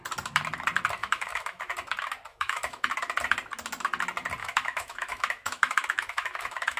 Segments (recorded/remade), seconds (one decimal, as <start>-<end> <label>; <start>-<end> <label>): 0.0-1.0 recorded; 1.0-1.7 remade; 1.7-2.3 recorded; 2.3-2.9 remade; 2.9-4.4 recorded; 4.4-6.8 remade